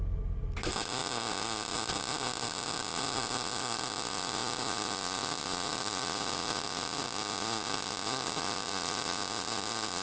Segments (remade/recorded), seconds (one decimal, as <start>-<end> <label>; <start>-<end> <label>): 0.0-10.0 recorded